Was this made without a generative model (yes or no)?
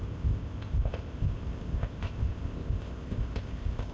no